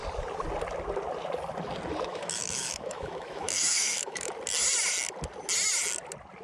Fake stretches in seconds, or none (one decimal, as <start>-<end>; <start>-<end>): 2.1-4.3

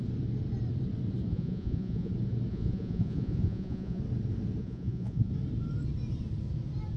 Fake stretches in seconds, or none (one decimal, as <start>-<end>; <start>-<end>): 1.3-2.1; 2.5-4.0; 4.6-5.3

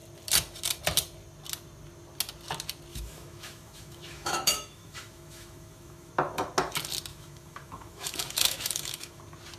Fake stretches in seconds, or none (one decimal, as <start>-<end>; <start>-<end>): 2.9-6.1; 7.1-9.2

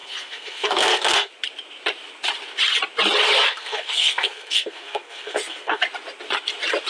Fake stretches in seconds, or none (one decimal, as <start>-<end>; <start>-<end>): 0.0-1.3; 3.5-5.8

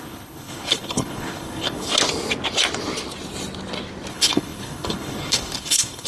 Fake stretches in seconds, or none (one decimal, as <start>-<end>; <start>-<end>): 0.0-1.9; 4.1-6.1

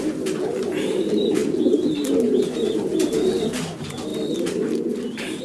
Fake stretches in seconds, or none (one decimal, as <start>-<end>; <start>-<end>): none

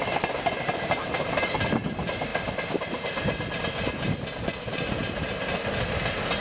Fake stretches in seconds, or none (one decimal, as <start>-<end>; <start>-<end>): none